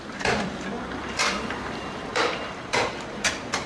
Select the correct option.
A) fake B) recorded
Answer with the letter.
A